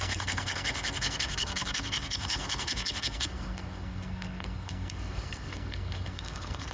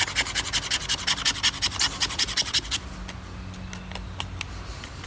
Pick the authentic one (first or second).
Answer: second